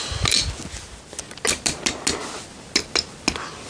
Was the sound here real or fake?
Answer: real